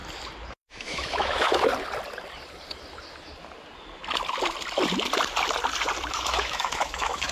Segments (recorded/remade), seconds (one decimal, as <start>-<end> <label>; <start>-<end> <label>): 0.0-0.5 recorded; 0.5-1.7 remade; 1.7-6.1 recorded; 6.1-7.3 remade